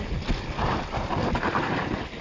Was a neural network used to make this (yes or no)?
no